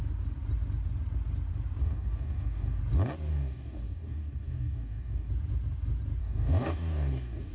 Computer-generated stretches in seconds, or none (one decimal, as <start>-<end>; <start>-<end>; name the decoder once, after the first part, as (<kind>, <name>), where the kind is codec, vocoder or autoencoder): 1.8-2.8 (codec, DAC); 3.3-5.3; 6.2-7.5